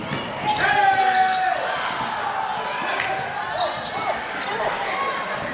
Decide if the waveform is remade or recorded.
recorded